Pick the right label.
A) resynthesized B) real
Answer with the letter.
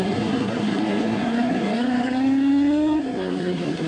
A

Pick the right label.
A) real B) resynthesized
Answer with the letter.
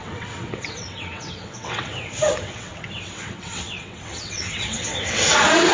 B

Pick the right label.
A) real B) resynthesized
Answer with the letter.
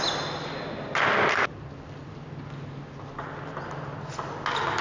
A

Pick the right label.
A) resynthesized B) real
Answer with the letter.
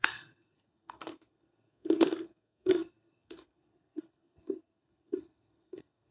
A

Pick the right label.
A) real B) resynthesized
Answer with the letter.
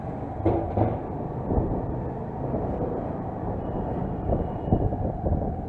A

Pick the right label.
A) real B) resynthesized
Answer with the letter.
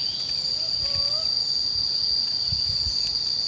A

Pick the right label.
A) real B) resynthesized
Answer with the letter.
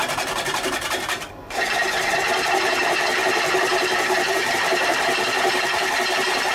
B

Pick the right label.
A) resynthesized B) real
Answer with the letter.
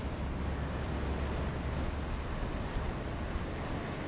B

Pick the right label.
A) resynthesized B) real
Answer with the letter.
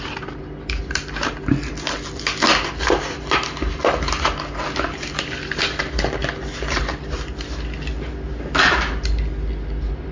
B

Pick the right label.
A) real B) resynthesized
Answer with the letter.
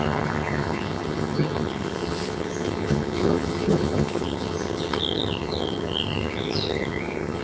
B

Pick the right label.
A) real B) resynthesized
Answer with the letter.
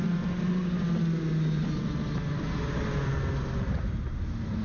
A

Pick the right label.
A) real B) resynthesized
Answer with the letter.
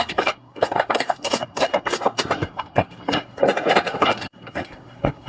B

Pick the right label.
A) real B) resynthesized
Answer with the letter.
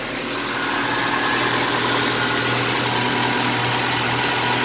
A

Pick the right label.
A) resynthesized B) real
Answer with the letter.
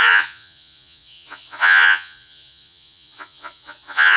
A